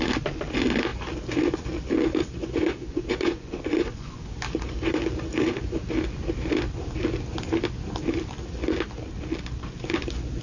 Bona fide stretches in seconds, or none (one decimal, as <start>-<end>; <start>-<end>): 0.0-2.4; 4.2-10.4